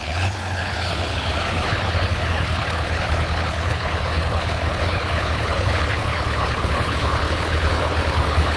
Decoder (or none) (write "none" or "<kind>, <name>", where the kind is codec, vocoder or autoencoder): codec, HILCodec